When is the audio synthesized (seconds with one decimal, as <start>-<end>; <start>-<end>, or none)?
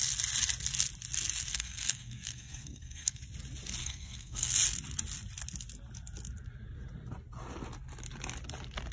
1.5-3.2; 3.8-4.5